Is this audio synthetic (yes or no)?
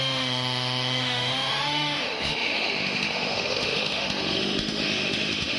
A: yes